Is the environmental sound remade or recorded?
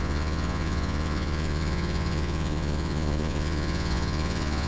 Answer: remade